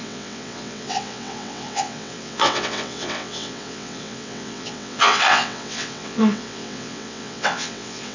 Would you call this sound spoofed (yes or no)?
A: yes